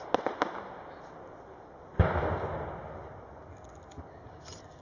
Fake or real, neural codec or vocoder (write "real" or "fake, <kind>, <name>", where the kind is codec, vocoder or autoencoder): real